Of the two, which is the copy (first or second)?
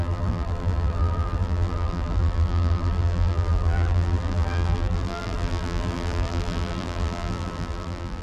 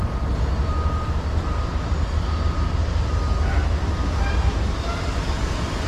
first